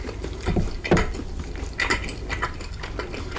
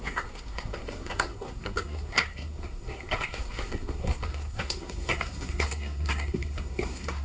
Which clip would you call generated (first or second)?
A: second